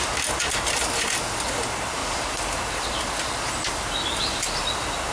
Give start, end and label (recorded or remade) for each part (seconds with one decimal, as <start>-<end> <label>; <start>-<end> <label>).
0.0-5.1 recorded